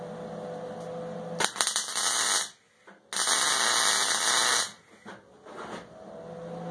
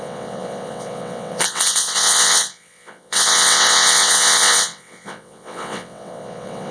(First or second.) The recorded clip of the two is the first